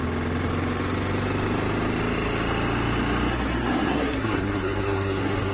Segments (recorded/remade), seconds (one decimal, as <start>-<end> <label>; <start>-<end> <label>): 0.0-3.3 recorded; 3.3-5.5 remade

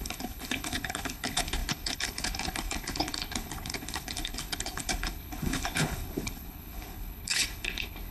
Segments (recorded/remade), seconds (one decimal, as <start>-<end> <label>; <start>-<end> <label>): 0.0-8.1 remade

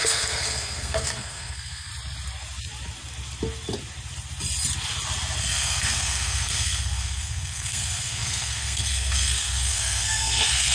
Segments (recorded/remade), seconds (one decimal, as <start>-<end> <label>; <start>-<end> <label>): 0.0-1.9 remade; 1.9-5.4 recorded; 5.4-10.7 remade

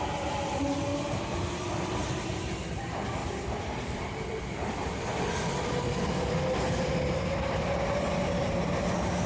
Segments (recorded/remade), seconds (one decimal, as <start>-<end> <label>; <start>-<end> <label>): 0.0-3.2 recorded; 3.2-5.2 remade; 5.2-9.3 recorded

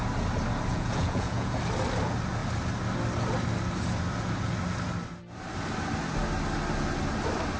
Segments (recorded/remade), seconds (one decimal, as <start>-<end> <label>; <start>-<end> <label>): 0.0-0.7 recorded; 0.7-1.6 remade; 1.6-7.6 recorded

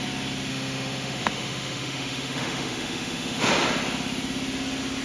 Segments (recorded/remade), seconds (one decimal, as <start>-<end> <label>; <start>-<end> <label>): 0.0-0.5 recorded; 0.5-3.5 remade; 3.5-5.0 recorded

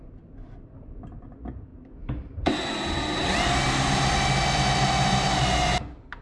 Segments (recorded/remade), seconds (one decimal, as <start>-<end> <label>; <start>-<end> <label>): 0.0-6.2 recorded